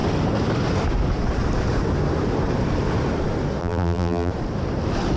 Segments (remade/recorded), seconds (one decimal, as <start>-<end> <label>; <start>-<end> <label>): 0.0-3.6 recorded; 3.6-4.3 remade; 4.3-5.2 recorded